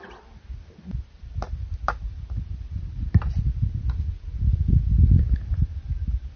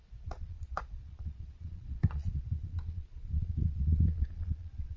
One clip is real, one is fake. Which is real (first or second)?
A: first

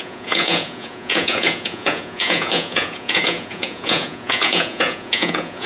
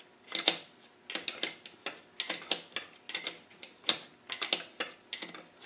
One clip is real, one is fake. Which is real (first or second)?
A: second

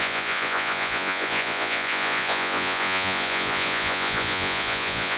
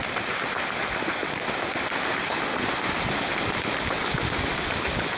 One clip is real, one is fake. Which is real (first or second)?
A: second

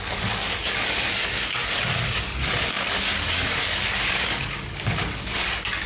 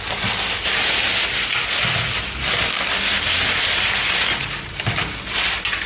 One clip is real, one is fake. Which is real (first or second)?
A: second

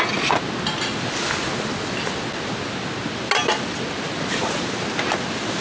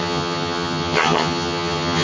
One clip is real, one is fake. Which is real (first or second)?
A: first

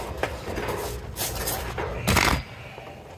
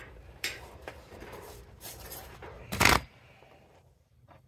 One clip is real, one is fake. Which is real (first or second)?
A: first